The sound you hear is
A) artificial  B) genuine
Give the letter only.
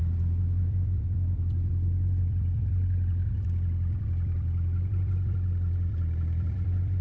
A